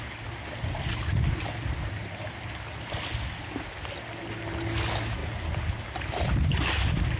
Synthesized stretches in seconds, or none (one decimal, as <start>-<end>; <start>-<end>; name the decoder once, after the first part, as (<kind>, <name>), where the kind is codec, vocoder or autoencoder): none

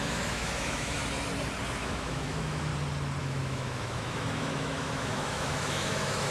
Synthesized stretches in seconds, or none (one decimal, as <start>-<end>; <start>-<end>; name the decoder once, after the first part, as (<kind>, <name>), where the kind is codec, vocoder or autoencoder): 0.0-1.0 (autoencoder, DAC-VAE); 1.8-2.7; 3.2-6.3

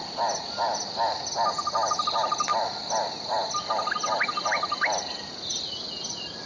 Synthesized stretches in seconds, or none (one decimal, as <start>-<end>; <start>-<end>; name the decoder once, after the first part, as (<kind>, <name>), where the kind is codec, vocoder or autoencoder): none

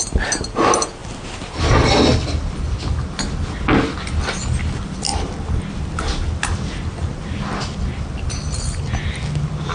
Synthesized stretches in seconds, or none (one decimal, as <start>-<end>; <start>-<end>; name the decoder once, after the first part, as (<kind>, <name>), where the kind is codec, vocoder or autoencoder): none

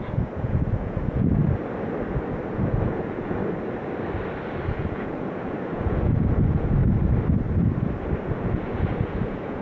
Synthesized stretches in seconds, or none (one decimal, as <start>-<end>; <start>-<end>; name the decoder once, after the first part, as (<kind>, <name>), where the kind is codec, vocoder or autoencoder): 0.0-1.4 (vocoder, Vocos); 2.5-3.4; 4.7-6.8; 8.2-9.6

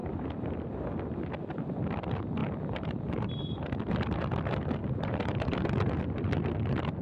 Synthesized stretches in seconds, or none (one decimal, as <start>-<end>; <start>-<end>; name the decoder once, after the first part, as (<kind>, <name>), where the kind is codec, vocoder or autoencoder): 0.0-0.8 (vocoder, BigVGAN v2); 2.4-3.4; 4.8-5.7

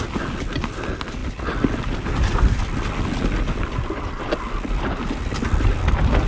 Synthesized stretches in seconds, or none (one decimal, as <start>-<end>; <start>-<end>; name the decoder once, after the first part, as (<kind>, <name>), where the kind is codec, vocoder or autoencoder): none

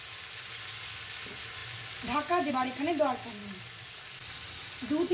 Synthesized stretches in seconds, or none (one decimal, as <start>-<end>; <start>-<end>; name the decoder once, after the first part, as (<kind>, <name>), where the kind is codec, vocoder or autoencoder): none